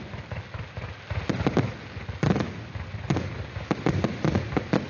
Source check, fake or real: real